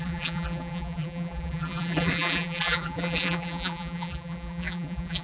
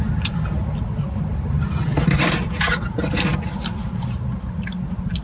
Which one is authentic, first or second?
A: second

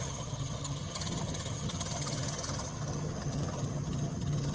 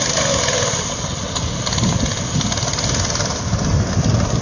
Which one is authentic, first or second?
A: second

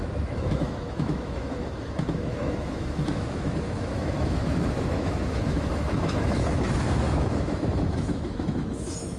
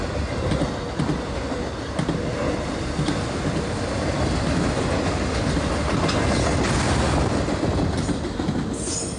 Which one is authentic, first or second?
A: second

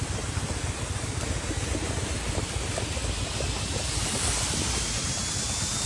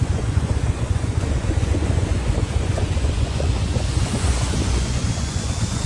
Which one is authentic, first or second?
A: first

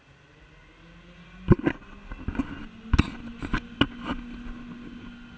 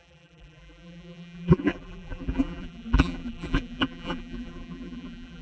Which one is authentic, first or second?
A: first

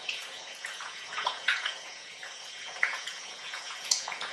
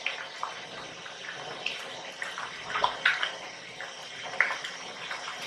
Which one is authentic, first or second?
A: second